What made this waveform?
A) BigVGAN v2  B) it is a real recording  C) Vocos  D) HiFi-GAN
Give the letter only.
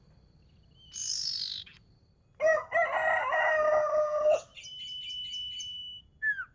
B